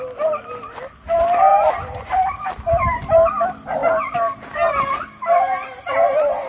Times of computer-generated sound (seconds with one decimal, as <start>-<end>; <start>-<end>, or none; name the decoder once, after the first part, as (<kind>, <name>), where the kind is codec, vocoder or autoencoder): 1.5-2.5 (vocoder, BigVGAN v2)